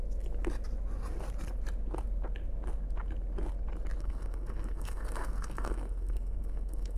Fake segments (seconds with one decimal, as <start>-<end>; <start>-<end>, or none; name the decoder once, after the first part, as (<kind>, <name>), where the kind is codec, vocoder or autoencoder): 4.0-7.0 (codec, SNAC)